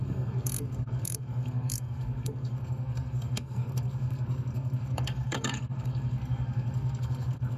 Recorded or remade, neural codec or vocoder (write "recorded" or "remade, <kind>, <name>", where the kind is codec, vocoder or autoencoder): remade, codec, SNAC